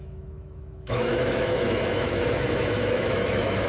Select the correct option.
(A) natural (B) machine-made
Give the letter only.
B